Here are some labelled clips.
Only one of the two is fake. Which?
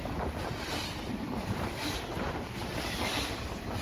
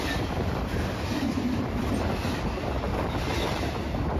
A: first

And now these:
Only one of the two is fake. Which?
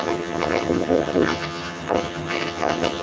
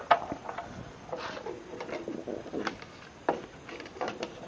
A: first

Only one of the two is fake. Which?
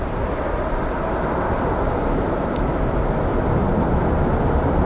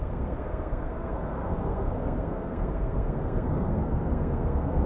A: second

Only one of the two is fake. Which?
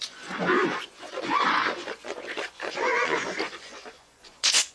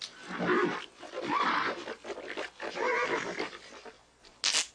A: first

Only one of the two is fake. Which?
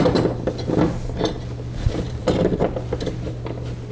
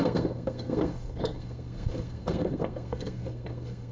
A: second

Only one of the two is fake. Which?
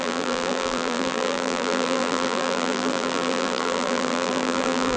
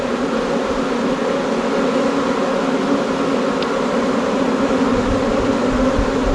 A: first